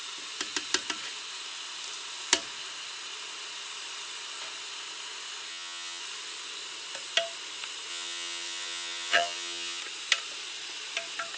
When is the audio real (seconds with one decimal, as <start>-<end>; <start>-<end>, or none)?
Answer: 0.0-5.5; 6.0-7.9; 9.8-11.4